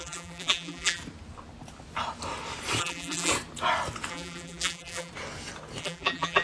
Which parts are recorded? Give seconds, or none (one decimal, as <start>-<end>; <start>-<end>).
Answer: 1.0-2.8; 3.3-4.1; 5.1-5.8